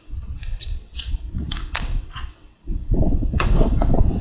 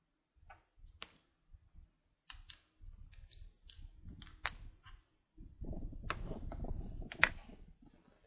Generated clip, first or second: first